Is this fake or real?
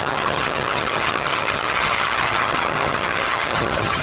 fake